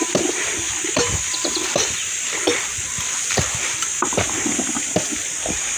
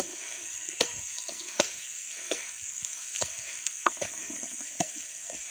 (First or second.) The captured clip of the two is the first